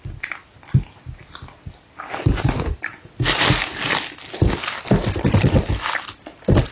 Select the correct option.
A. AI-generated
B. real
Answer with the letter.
B